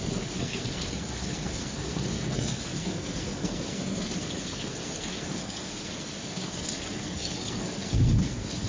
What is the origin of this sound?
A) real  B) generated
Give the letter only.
B